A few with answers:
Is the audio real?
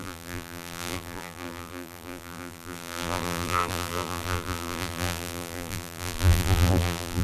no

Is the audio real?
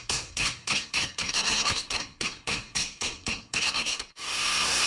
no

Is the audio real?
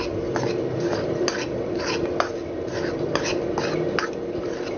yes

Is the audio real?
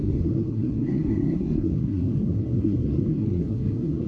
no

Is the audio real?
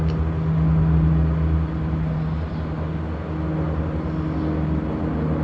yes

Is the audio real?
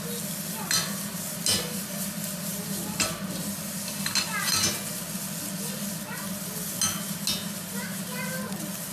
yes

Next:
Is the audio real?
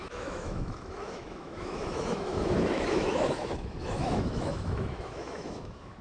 no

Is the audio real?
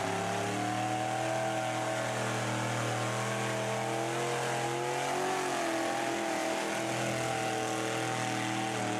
yes